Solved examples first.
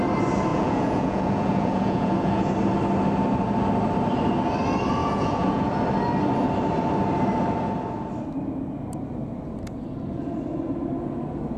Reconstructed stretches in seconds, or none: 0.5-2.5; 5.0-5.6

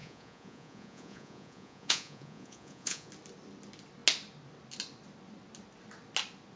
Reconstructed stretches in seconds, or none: 0.0-3.1